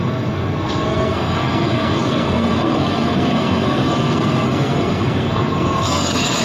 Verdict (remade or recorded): remade